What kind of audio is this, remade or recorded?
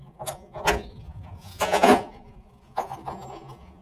remade